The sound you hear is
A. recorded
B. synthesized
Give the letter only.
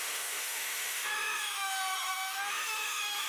B